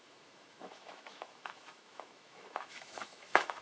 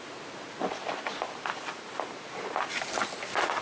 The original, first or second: second